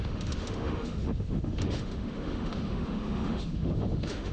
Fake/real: fake